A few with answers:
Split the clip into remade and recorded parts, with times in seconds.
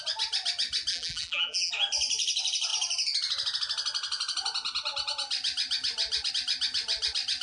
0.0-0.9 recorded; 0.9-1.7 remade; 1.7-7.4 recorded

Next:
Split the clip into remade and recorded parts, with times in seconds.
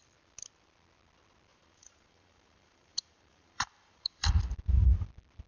0.0-1.5 recorded; 1.5-4.3 remade; 4.3-5.5 recorded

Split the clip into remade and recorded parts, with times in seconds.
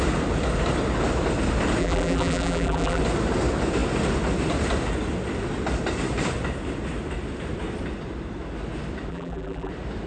0.0-1.8 recorded; 1.8-3.0 remade; 3.0-9.1 recorded; 9.1-9.7 remade; 9.7-10.1 recorded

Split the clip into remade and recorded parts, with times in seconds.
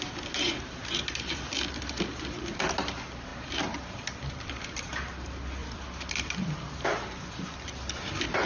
0.0-0.8 recorded; 0.8-2.4 remade; 2.4-3.3 recorded; 3.3-4.6 remade; 4.6-5.6 recorded; 5.6-6.5 remade; 6.5-8.5 recorded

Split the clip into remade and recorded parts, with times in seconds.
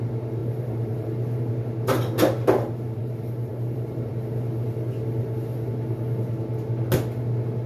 0.0-0.4 recorded; 0.4-1.5 remade; 1.5-3.0 recorded; 3.0-4.1 remade; 4.1-7.7 recorded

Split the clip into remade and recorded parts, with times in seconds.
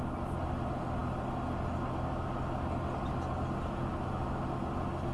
0.0-5.1 recorded